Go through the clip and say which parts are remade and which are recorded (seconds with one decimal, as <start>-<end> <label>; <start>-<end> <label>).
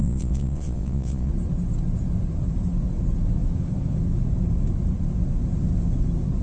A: 0.0-1.3 remade; 1.3-6.4 recorded